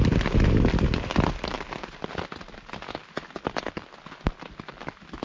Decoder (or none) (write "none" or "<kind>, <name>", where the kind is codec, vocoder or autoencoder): none